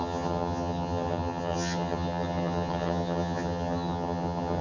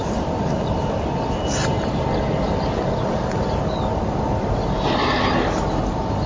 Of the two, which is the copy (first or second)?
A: first